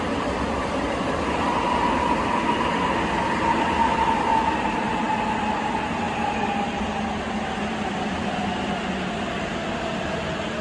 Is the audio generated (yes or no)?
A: no